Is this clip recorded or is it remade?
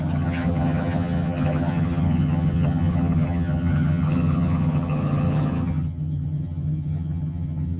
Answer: remade